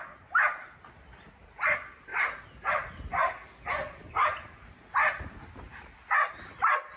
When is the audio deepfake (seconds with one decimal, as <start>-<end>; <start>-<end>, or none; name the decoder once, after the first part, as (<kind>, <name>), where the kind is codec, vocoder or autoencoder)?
none